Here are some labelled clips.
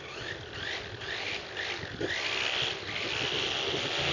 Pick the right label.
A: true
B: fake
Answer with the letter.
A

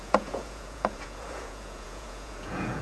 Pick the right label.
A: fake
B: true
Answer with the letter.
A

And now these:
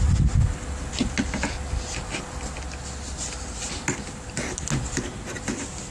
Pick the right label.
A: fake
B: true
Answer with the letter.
B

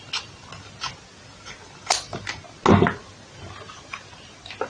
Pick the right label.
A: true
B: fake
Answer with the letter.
A